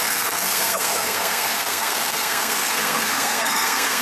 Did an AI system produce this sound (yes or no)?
yes